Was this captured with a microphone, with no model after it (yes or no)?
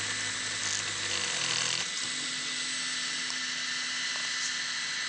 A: yes